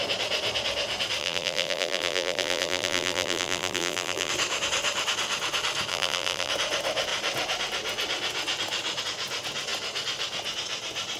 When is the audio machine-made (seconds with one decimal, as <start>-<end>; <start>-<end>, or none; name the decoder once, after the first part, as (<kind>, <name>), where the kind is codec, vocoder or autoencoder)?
1.2-4.3 (vocoder, BigVGAN v2); 5.9-6.5